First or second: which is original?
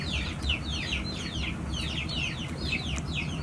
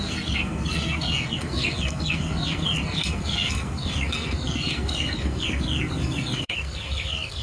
first